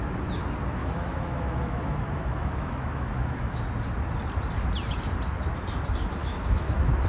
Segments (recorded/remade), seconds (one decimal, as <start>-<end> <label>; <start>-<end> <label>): 0.0-0.8 recorded; 0.8-3.6 remade; 3.6-6.2 recorded; 6.2-7.1 remade